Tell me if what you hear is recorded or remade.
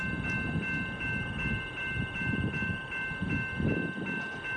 recorded